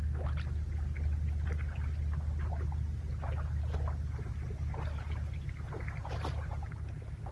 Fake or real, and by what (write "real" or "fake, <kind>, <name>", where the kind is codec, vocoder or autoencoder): real